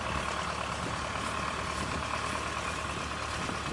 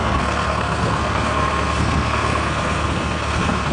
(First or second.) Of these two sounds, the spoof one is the second